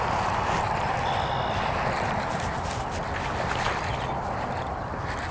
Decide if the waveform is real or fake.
fake